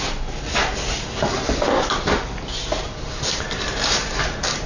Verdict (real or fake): real